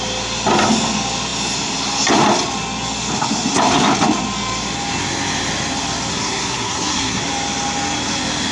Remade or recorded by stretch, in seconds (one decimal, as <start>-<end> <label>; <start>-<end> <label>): 0.0-6.1 recorded; 6.1-7.2 remade; 7.2-8.5 recorded